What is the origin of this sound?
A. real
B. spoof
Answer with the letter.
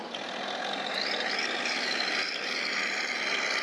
A